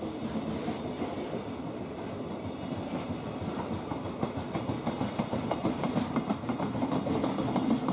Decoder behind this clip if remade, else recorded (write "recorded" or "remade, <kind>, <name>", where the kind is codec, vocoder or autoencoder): recorded